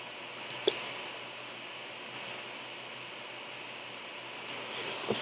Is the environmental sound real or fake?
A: real